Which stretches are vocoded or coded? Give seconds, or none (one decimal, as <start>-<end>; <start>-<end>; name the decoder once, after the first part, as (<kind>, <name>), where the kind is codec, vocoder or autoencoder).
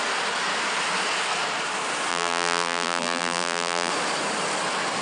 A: 2.1-3.9 (vocoder, BigVGAN v2)